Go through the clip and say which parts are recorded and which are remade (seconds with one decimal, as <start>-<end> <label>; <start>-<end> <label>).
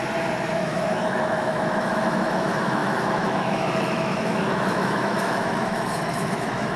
0.0-0.5 recorded; 0.5-6.8 remade